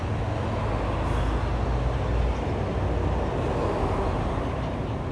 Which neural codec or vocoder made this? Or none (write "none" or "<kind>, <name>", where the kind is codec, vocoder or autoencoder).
none